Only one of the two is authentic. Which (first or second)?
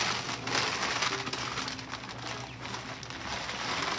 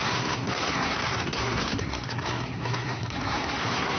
first